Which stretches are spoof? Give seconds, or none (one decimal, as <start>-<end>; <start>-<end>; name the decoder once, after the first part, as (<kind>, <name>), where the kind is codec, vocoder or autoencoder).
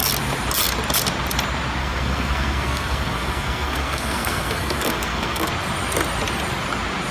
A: 1.8-5.5 (codec, SNAC)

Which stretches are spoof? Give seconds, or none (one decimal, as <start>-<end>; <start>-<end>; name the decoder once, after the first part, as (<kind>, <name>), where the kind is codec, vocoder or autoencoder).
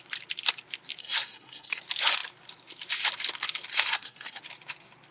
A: 1.0-1.8 (codec, SNAC); 3.7-4.4